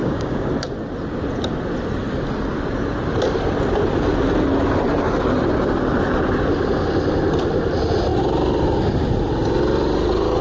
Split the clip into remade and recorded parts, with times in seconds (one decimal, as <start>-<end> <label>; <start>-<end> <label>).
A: 0.0-0.5 remade; 0.5-10.4 recorded